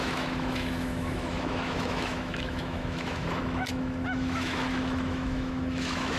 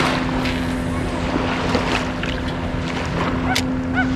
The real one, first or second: second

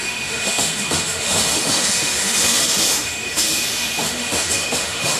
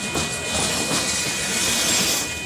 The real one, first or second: second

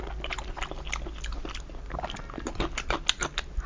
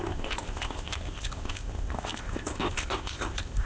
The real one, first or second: first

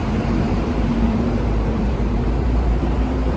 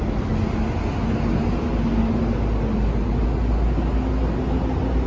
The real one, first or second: second